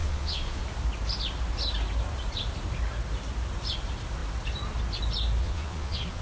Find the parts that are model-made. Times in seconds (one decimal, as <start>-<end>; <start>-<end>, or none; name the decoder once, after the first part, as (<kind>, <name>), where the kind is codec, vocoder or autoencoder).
0.0-0.6 (vocoder, Vocos); 5.4-6.2